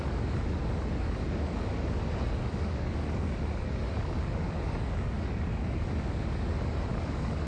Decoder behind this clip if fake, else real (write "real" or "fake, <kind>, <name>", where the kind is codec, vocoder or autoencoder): fake, codec, DAC